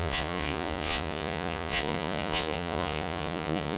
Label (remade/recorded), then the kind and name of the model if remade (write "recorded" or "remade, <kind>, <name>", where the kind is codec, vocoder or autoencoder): remade, vocoder, Vocos